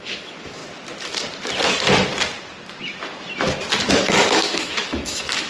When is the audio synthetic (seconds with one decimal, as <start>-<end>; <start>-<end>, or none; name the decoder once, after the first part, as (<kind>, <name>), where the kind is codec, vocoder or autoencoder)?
0.0-0.6 (autoencoder, DAC-VAE); 3.9-5.5